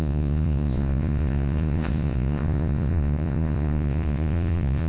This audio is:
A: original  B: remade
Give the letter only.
B